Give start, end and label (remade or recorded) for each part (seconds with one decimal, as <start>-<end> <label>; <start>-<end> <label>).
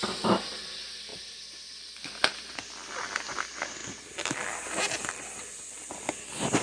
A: 0.0-6.6 recorded